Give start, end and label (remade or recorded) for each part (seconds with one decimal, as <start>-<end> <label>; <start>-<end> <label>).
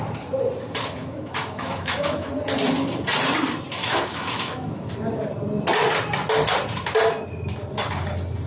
0.0-1.0 recorded; 1.0-2.3 remade; 2.3-3.8 recorded; 3.8-4.9 remade; 4.9-8.5 recorded